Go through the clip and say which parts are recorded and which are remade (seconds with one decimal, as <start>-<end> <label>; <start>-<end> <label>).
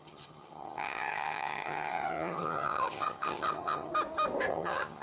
0.0-3.9 remade; 3.9-4.5 recorded; 4.5-5.0 remade